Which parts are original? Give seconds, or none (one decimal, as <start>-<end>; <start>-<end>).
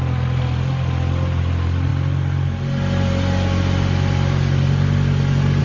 0.0-5.6